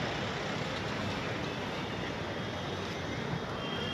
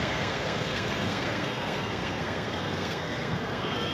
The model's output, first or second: second